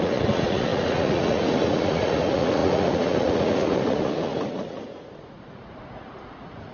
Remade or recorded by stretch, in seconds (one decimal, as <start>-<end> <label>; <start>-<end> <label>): 0.0-6.7 remade